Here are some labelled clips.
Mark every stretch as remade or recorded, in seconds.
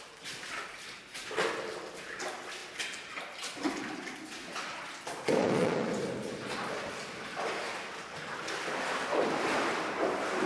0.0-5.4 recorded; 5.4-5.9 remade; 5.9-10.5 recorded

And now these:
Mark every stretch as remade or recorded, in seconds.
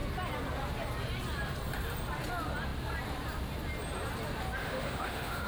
0.0-4.6 recorded; 4.6-5.5 remade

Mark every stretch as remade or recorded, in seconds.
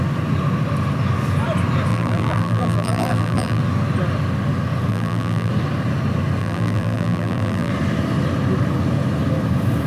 0.0-1.9 recorded; 1.9-3.6 remade; 3.6-4.9 recorded; 4.9-5.5 remade; 5.5-6.4 recorded; 6.4-7.7 remade; 7.7-9.9 recorded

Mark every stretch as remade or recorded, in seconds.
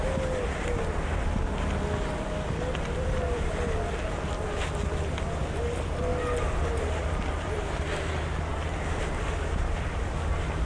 0.0-10.7 recorded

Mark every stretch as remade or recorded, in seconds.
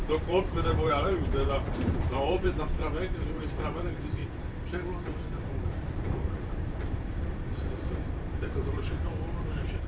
0.0-4.2 remade; 4.2-5.6 recorded; 5.6-9.9 remade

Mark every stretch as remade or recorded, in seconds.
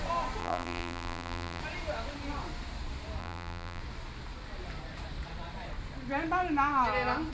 0.0-0.4 recorded; 0.4-1.6 remade; 1.6-3.2 recorded; 3.2-3.8 remade; 3.8-7.3 recorded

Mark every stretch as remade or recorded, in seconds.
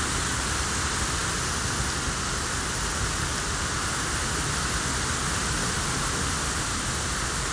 0.0-7.5 recorded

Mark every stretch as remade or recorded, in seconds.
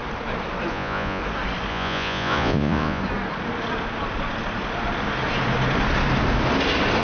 0.0-0.7 recorded; 0.7-1.2 remade; 1.2-1.7 recorded; 1.7-3.0 remade; 3.0-7.0 recorded